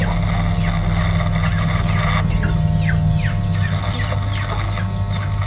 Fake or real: real